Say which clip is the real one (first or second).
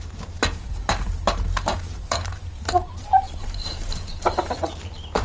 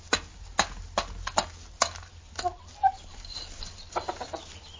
second